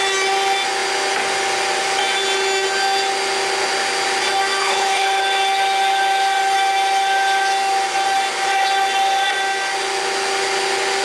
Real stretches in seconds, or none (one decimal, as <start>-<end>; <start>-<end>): 0.0-4.6; 5.2-11.0